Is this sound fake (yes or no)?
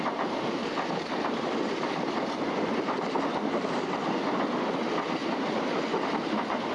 no